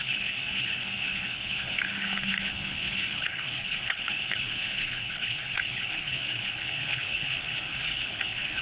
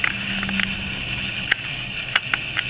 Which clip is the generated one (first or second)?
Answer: first